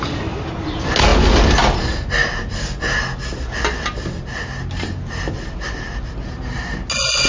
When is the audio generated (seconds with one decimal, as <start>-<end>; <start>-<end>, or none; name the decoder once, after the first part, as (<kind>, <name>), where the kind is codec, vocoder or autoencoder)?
none